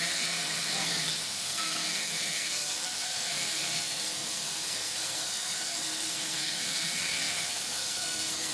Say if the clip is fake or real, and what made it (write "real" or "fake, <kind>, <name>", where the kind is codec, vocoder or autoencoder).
fake, codec, SNAC